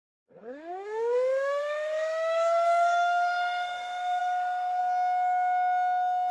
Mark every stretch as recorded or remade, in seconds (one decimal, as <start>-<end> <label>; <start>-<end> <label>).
0.0-4.8 remade; 4.8-6.3 recorded